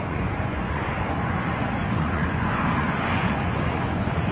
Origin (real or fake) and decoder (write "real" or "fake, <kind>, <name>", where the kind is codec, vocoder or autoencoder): fake, vocoder, Vocos